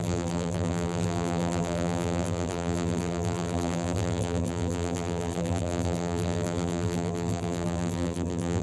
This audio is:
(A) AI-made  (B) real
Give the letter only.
A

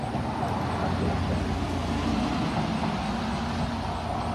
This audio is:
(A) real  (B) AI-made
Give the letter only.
A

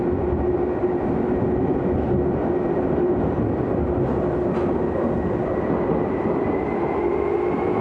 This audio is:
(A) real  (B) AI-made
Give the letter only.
A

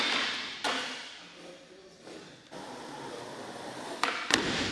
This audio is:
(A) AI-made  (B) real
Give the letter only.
B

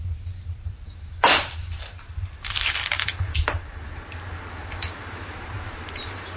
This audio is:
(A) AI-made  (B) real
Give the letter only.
A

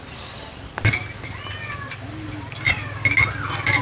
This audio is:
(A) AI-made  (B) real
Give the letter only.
A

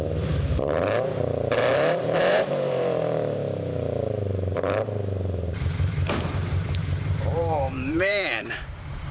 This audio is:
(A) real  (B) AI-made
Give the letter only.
B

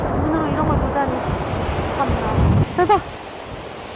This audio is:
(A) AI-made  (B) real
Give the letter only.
B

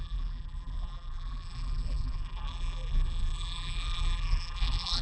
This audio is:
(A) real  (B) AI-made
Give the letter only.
B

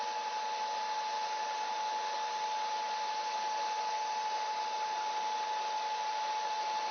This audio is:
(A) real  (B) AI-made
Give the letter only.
A